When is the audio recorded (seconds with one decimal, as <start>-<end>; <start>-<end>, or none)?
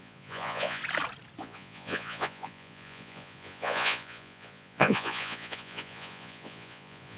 0.8-1.4